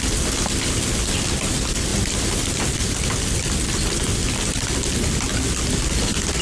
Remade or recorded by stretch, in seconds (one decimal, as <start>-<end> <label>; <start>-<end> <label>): 0.0-6.4 recorded

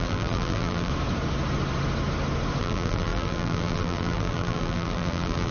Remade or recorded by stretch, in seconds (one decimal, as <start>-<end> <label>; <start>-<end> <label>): 0.0-0.9 remade; 0.9-2.6 recorded; 2.6-5.5 remade

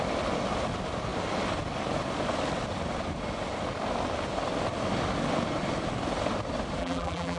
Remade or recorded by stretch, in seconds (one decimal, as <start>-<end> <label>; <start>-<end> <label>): 0.0-6.8 recorded; 6.8-7.4 remade

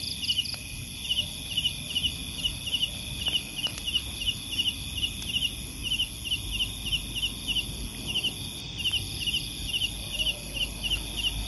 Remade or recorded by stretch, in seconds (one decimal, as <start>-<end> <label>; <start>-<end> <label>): 0.0-11.5 recorded

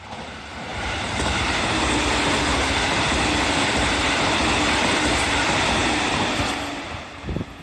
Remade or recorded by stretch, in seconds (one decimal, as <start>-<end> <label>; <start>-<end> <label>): 0.0-0.7 recorded; 0.7-1.8 remade; 1.8-5.8 recorded; 5.8-6.4 remade; 6.4-7.6 recorded

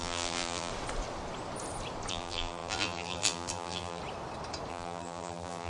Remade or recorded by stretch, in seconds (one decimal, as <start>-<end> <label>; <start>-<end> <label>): 0.0-0.7 remade; 0.7-2.1 recorded; 2.1-4.0 remade; 4.0-4.7 recorded; 4.7-5.7 remade